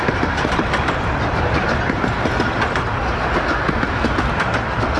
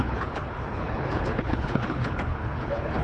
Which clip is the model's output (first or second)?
second